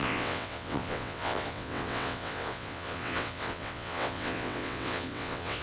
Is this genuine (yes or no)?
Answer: no